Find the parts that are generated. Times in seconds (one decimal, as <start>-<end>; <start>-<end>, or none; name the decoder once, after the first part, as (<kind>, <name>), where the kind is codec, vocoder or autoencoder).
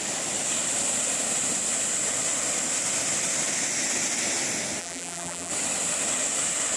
4.8-5.5 (vocoder, BigVGAN v2)